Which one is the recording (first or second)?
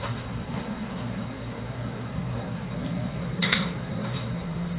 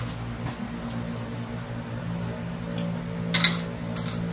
second